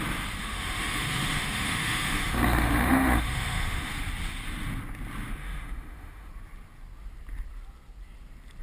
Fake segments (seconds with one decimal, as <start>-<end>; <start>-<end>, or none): 0.4-3.9; 5.4-6.3